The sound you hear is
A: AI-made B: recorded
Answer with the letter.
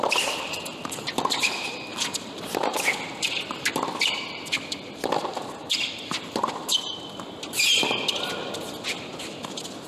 B